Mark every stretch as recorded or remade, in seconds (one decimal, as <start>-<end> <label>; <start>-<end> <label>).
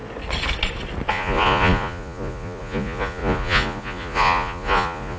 0.0-1.1 recorded; 1.1-5.2 remade